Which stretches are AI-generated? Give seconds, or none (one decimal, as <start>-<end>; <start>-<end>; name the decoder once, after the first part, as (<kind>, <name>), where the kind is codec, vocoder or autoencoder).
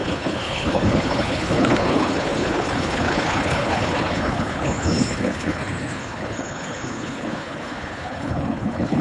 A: 0.0-9.0 (codec, HILCodec)